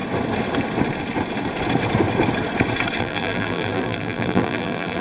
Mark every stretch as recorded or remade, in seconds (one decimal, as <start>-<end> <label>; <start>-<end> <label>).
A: 0.0-3.0 recorded; 3.0-5.0 remade